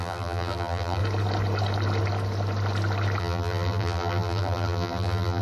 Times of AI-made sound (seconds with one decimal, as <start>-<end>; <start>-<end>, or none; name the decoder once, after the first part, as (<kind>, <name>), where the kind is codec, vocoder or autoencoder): 0.0-1.0 (vocoder, BigVGAN v2); 3.2-5.4